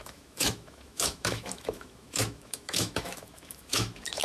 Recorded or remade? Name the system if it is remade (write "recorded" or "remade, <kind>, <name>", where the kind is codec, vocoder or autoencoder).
remade, autoencoder, DAC-VAE